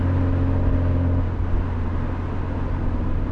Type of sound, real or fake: real